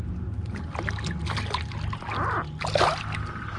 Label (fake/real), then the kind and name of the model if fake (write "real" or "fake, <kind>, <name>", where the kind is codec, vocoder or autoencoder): real